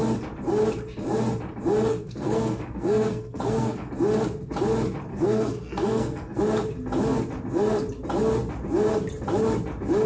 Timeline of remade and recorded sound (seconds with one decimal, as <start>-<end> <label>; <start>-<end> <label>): 0.0-1.9 recorded; 1.9-3.9 remade; 3.9-5.1 recorded; 5.1-6.4 remade; 6.4-10.1 recorded